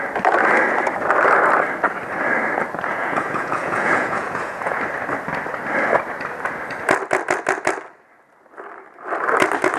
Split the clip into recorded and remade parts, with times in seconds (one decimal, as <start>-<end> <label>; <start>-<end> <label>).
0.0-2.9 recorded; 2.9-4.8 remade; 4.8-9.8 recorded